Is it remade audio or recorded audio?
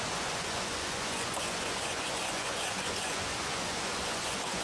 remade